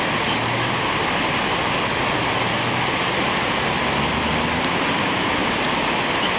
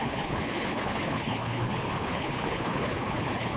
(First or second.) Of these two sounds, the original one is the first